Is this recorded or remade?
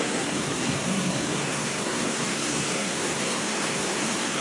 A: remade